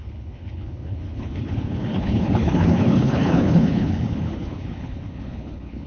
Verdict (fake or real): fake